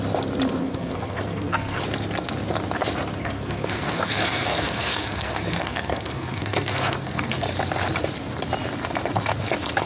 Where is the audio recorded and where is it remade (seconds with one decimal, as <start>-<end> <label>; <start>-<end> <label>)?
0.0-0.6 recorded; 0.6-1.8 remade; 1.8-3.2 recorded; 3.2-7.3 remade; 7.3-9.9 recorded